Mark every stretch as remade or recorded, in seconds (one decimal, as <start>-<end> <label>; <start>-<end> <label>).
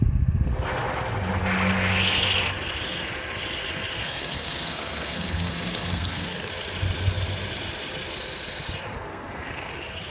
0.0-4.0 recorded; 4.0-6.5 remade; 6.5-9.1 recorded; 9.1-9.7 remade; 9.7-10.1 recorded